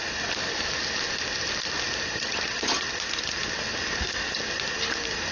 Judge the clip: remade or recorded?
recorded